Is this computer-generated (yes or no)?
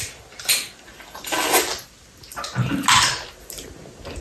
no